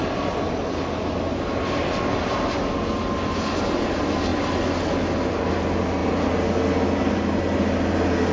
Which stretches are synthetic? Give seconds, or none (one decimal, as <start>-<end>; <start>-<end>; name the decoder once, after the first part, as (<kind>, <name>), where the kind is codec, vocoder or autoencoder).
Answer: none